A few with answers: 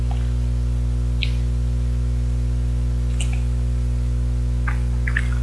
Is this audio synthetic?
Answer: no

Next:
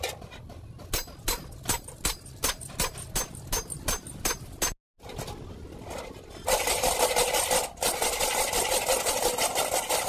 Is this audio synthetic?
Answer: no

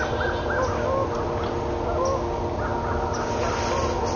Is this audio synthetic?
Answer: no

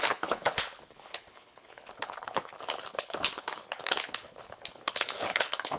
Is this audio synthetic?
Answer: yes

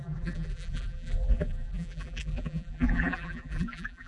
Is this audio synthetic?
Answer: yes